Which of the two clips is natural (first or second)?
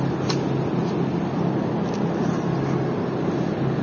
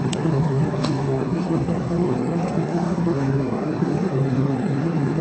first